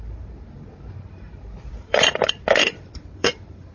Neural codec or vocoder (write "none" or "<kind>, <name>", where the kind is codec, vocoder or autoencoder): vocoder, BigVGAN v2